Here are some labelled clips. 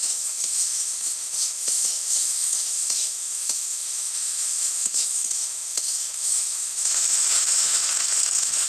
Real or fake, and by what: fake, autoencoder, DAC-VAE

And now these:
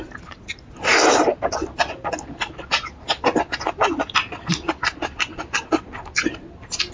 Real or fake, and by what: real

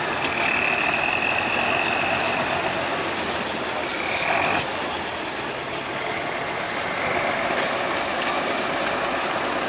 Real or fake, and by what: real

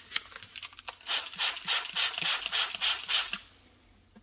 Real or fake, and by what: real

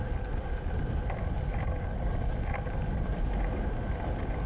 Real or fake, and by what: real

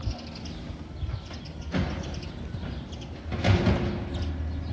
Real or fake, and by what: real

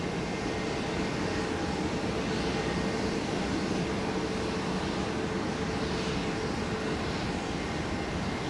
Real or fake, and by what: real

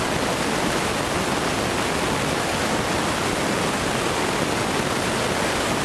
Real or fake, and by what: real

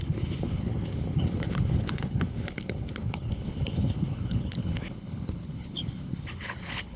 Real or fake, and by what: fake, codec, HILCodec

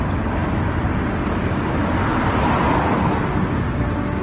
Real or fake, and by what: real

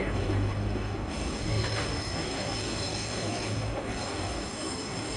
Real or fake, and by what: fake, codec, DAC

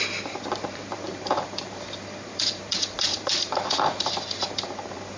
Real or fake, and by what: fake, vocoder, BigVGAN v2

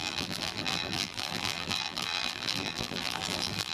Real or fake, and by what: fake, vocoder, BigVGAN v2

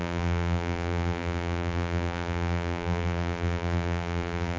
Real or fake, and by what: fake, vocoder, BigVGAN v2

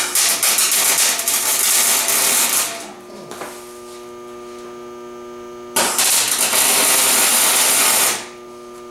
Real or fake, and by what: real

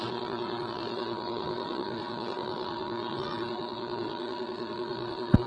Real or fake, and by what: fake, vocoder, Vocos